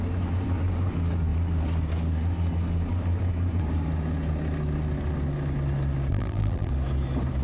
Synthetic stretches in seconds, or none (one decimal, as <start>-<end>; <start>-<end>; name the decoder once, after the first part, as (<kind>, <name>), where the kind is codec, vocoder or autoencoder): 6.1-6.7 (vocoder, BigVGAN v2)